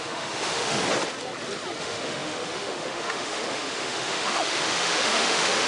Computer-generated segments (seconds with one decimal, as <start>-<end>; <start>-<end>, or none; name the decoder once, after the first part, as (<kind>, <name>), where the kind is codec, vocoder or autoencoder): 0.0-0.8 (autoencoder, DAC-VAE); 1.8-5.7